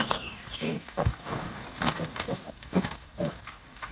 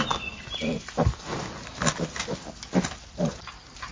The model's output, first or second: first